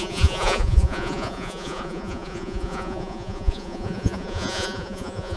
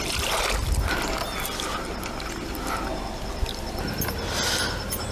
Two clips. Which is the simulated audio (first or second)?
first